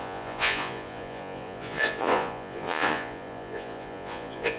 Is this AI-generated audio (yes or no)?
yes